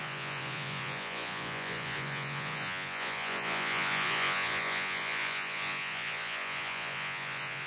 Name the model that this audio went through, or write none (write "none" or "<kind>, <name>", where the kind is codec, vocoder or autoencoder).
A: vocoder, Vocos